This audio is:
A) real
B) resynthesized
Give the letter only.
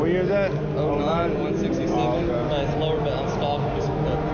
A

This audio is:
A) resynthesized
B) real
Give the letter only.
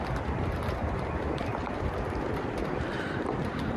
A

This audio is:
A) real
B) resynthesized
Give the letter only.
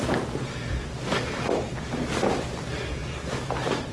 A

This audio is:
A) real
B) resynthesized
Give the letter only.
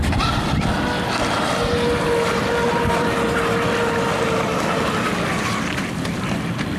A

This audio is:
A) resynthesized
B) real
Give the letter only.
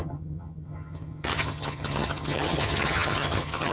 A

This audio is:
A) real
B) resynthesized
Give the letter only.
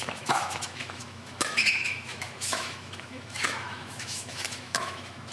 B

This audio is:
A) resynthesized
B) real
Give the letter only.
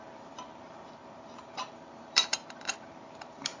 A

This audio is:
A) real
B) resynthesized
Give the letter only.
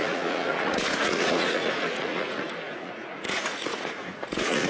B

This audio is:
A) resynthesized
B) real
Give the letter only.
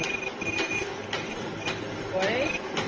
B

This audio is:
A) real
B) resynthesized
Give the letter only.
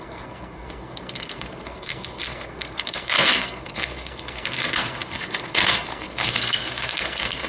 B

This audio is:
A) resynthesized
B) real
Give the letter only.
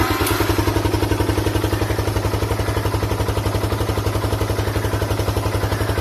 B